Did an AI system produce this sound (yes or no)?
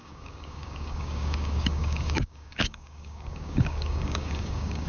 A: yes